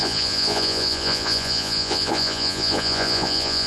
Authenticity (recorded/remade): remade